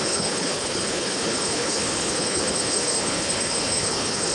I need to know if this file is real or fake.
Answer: fake